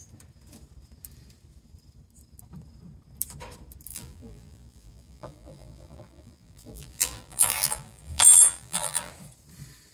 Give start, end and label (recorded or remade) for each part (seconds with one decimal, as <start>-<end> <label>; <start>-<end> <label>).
0.0-3.9 recorded; 3.9-9.1 remade; 9.1-9.9 recorded